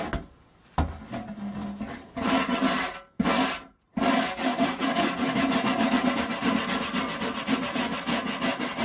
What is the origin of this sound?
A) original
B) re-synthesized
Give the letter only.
A